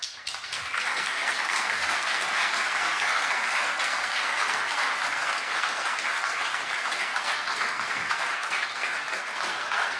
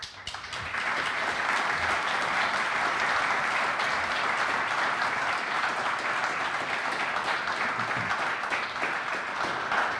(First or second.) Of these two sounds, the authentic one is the second